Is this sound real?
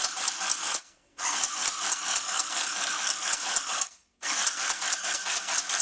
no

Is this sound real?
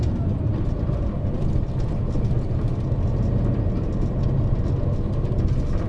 yes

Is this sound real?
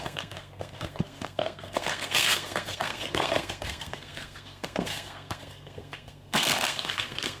no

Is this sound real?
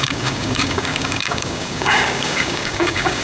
no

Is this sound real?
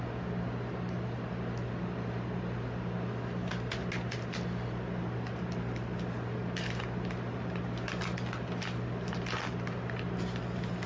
yes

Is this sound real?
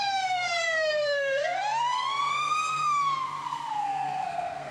no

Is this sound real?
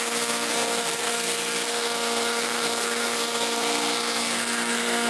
no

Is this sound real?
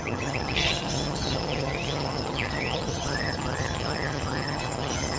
no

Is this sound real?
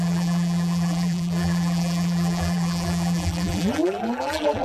no